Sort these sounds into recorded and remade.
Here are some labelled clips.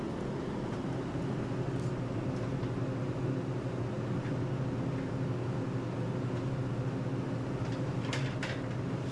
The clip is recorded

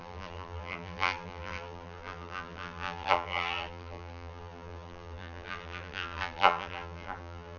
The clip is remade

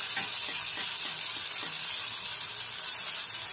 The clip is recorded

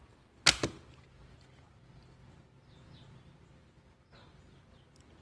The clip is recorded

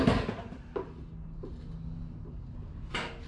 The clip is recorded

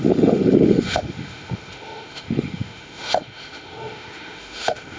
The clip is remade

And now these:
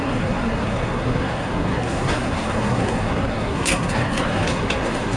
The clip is remade